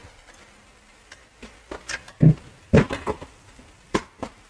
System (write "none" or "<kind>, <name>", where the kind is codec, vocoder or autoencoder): none